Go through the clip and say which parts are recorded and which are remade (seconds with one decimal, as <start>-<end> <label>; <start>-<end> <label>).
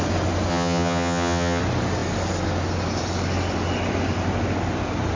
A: 0.0-0.5 recorded; 0.5-1.6 remade; 1.6-5.2 recorded